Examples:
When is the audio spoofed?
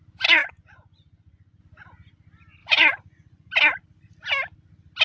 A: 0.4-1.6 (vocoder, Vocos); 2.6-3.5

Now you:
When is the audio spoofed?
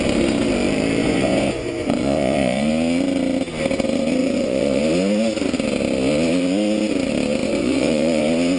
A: 1.0-2.7 (vocoder, Vocos); 4.2-4.8; 7.4-8.2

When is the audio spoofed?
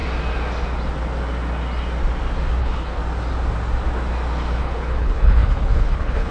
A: 2.6-3.0 (codec, HILCodec); 4.6-6.3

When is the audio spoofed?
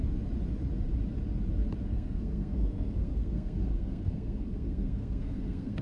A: 1.9-5.8 (codec, SNAC)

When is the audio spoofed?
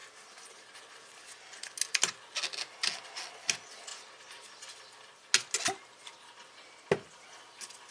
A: none